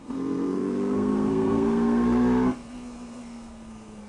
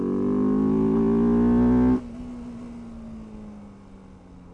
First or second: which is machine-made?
first